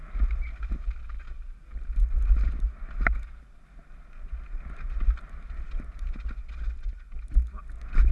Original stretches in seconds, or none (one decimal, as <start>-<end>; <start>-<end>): 0.0-8.1